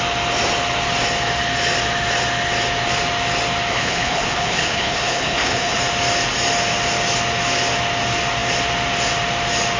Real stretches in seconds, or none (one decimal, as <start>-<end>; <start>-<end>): 0.0-3.7; 5.8-9.8